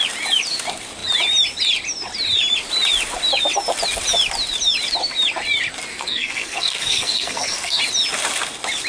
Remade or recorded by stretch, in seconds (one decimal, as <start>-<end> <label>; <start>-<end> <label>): 0.0-5.9 recorded; 5.9-7.8 remade; 7.8-8.9 recorded